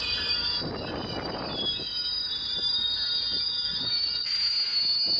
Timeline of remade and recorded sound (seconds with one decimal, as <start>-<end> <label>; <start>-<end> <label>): 0.0-3.7 recorded; 3.7-4.5 remade; 4.5-5.2 recorded